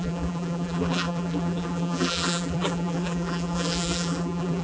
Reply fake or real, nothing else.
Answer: fake